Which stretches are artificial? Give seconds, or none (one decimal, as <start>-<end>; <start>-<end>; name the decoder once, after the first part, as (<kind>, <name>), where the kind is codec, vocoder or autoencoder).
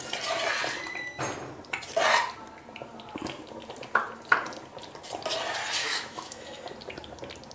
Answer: 5.8-6.6 (autoencoder, DAC-VAE)